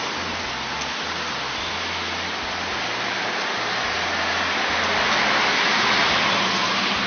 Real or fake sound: real